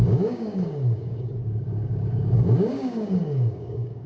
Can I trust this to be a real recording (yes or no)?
no